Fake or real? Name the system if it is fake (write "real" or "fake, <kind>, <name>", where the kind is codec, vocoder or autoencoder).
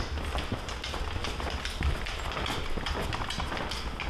real